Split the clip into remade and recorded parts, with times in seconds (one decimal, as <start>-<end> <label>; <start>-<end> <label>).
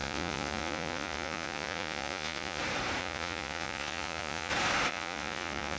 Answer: 0.0-2.6 remade; 2.6-3.0 recorded; 3.0-4.5 remade; 4.5-4.9 recorded; 4.9-5.8 remade